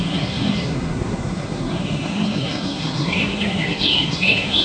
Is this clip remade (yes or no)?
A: yes